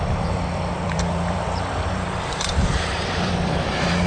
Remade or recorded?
remade